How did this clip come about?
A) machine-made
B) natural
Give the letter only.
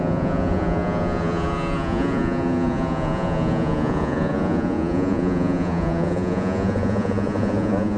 A